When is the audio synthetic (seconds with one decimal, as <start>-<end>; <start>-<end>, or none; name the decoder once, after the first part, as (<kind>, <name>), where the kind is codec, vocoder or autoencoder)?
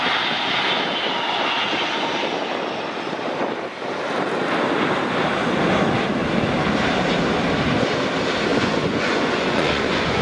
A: 8.5-10.2 (vocoder, Vocos)